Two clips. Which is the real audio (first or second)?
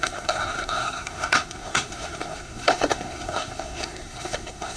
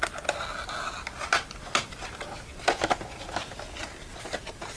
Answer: second